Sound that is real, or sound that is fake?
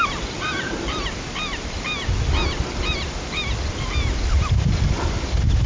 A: real